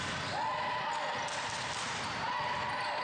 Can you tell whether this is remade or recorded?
recorded